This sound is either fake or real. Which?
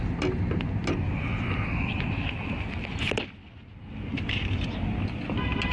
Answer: real